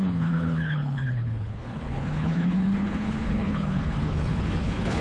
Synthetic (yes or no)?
yes